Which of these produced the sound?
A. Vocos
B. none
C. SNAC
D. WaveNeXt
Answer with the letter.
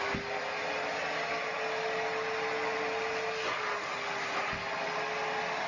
B